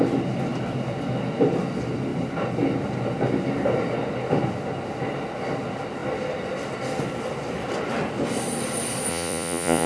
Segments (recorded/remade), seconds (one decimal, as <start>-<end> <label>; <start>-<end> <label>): 0.0-9.1 recorded; 9.1-9.9 remade